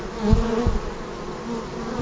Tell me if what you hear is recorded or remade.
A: recorded